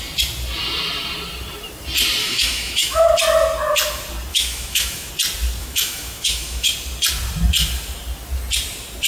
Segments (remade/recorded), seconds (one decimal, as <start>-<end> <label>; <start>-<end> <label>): 0.0-2.2 recorded; 2.2-3.1 remade; 3.1-4.3 recorded; 4.3-5.1 remade; 5.1-5.6 recorded; 5.6-6.7 remade; 6.7-9.1 recorded